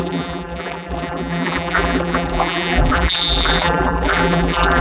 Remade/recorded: remade